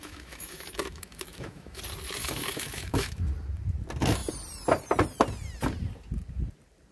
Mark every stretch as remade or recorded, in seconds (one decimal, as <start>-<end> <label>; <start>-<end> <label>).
0.0-1.8 remade; 1.8-2.2 recorded; 2.2-3.2 remade; 3.2-6.9 recorded